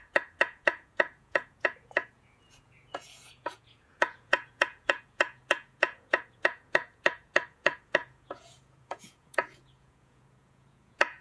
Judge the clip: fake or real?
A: fake